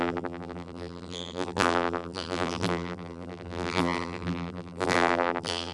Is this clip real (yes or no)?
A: no